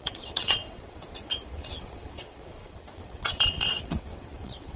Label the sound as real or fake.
fake